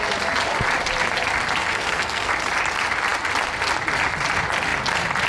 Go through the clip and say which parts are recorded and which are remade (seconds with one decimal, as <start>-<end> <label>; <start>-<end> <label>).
0.0-1.6 recorded; 1.6-2.3 remade; 2.3-5.3 recorded